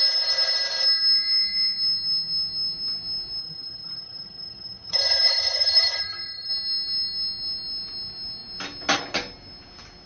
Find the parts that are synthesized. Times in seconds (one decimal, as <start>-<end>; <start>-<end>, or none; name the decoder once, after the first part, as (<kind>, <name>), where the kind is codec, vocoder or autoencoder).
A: 3.4-6.5 (vocoder, HiFi-GAN)